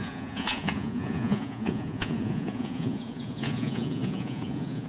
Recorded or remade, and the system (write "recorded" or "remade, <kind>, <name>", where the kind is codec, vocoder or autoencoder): remade, vocoder, Vocos